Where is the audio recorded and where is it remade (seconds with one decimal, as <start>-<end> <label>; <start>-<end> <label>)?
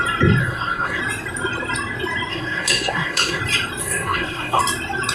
0.0-0.4 recorded; 0.4-1.0 remade; 1.0-2.3 recorded; 2.3-3.4 remade; 3.4-3.8 recorded; 3.8-4.6 remade; 4.6-5.1 recorded